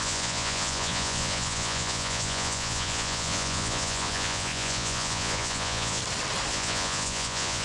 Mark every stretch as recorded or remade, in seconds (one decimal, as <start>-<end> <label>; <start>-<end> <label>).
0.0-6.0 remade; 6.0-6.5 recorded; 6.5-7.6 remade